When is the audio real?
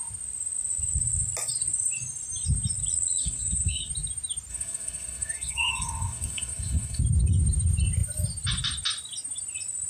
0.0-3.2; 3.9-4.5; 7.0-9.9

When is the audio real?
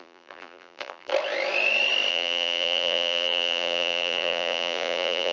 1.1-2.1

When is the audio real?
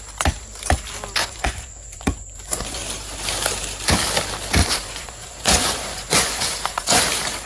0.0-1.2; 2.8-4.6; 7.0-7.5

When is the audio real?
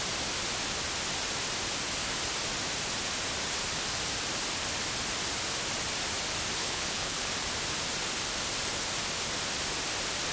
0.0-6.6; 7.3-10.3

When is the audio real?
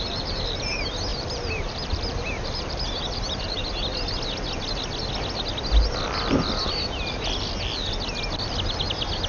0.0-1.1; 3.6-9.3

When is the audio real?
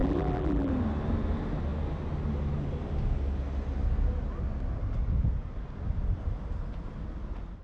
0.7-7.6